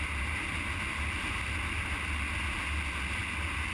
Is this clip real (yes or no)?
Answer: yes